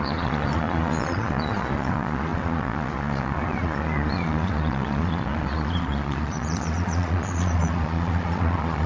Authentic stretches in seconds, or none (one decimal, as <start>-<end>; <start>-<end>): none